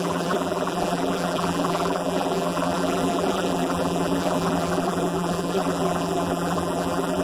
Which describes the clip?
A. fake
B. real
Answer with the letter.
A